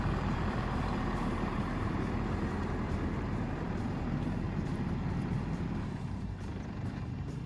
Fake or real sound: fake